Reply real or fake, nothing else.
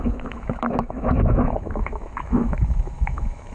fake